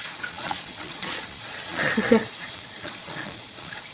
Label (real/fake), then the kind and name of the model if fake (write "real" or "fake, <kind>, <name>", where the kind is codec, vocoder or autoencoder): fake, vocoder, Vocos